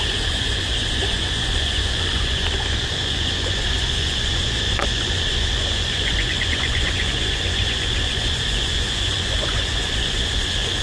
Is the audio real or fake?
fake